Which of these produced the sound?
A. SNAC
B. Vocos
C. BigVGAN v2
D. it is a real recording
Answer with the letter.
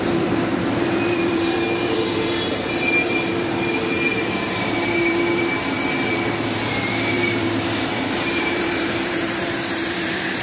C